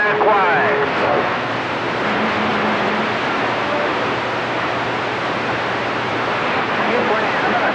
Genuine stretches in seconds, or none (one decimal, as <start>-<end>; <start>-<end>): 0.0-0.9; 1.5-7.7